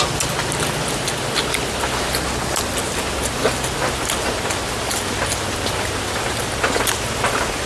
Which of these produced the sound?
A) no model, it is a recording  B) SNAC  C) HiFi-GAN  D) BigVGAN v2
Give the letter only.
A